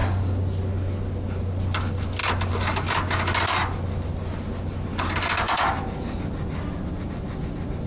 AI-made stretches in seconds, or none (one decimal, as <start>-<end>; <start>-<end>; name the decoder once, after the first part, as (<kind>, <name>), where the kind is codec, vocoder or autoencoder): none